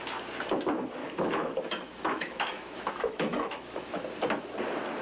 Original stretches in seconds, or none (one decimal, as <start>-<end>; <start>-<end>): 0.0-1.0; 4.0-5.0